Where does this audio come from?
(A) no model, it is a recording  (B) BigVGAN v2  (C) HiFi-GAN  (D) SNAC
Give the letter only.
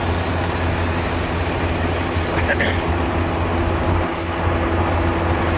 A